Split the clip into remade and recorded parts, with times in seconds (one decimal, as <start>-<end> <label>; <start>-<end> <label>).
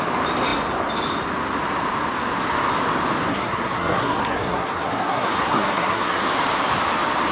0.0-3.3 recorded; 3.3-6.3 remade; 6.3-7.3 recorded